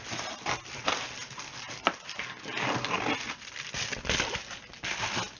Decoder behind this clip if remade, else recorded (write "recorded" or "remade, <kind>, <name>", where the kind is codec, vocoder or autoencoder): recorded